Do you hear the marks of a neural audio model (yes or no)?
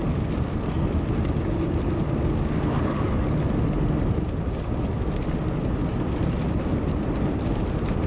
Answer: no